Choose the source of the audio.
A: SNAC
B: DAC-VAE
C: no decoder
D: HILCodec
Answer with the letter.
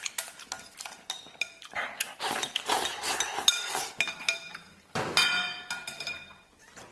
C